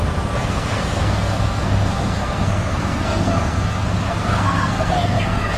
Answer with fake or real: fake